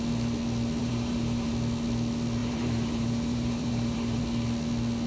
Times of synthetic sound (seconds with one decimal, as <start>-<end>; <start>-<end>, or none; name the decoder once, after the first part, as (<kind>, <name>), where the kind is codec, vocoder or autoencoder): 0.8-1.5 (vocoder, BigVGAN v2); 2.4-4.2